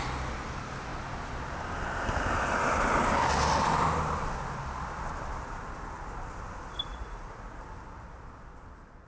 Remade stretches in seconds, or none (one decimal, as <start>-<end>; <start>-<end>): 6.9-7.6